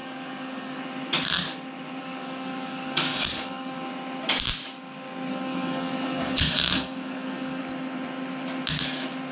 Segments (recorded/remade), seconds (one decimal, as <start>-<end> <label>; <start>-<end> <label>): 0.0-0.8 remade; 0.8-2.0 recorded; 2.0-3.9 remade; 3.9-5.3 recorded; 5.3-7.6 remade; 7.6-9.3 recorded